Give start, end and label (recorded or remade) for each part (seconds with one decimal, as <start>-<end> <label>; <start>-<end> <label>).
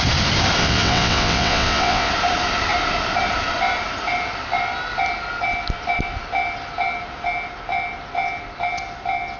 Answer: 0.0-0.6 recorded; 0.6-2.1 remade; 2.1-9.4 recorded